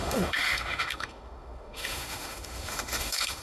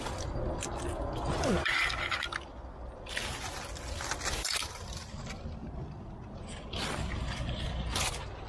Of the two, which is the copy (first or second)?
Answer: first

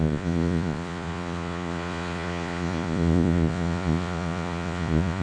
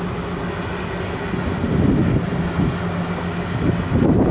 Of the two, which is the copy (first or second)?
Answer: first